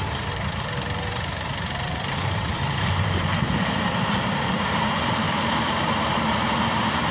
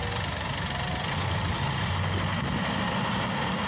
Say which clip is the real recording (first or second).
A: second